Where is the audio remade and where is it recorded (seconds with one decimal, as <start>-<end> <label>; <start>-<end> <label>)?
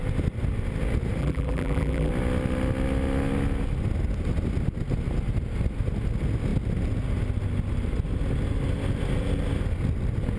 0.0-1.2 recorded; 1.2-2.1 remade; 2.1-10.4 recorded